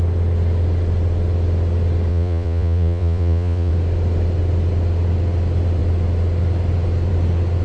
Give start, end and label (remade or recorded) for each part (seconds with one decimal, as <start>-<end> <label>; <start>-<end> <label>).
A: 0.0-2.1 recorded; 2.1-3.7 remade; 3.7-7.6 recorded